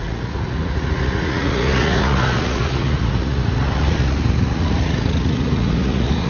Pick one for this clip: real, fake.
fake